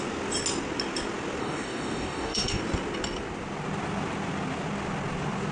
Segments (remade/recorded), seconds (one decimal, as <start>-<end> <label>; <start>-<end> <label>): 0.0-1.4 recorded; 1.4-2.6 remade; 2.6-5.5 recorded